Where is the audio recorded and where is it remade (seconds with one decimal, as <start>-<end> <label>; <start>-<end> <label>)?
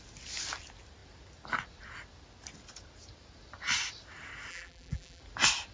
0.0-4.5 recorded; 4.5-5.2 remade; 5.2-5.7 recorded